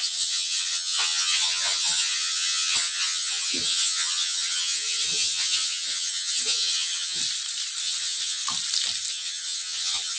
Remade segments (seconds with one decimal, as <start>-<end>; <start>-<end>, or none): 0.0-7.2; 7.8-8.4; 9.1-10.2